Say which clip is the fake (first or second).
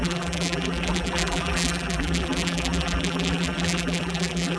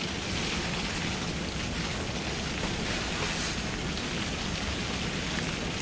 first